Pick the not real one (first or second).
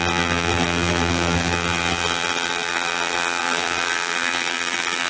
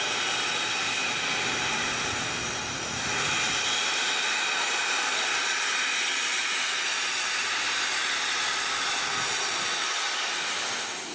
first